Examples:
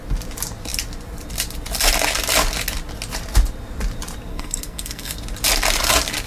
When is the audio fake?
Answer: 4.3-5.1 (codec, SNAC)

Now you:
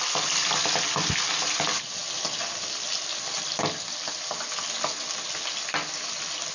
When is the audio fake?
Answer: none

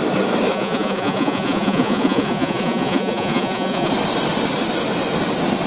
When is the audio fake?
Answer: 0.5-3.9 (vocoder, Vocos)

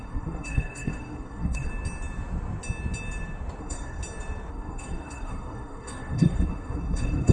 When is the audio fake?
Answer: 0.0-1.7 (codec, SNAC); 3.6-4.0; 4.5-7.3

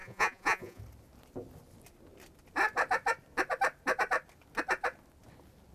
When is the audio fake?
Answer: 0.0-0.8 (vocoder, Vocos)

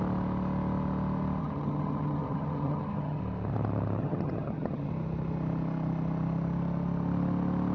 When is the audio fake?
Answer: 1.4-3.2 (vocoder, HiFi-GAN); 4.0-4.9

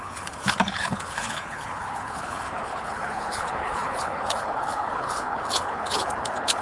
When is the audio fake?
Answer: 0.0-6.6 (codec, HILCodec)

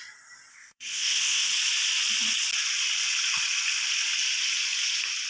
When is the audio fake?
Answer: 0.5-1.5 (codec, ZipCodec)